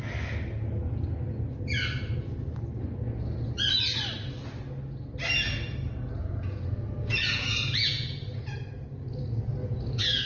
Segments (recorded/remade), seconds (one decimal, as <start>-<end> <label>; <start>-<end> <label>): 0.0-6.2 recorded; 6.2-8.5 remade; 8.5-9.6 recorded; 9.6-10.3 remade